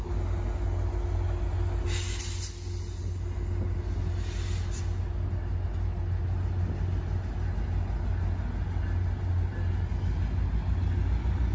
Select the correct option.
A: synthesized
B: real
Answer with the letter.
B